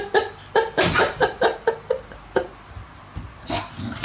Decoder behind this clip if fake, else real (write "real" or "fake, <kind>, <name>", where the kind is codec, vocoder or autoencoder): real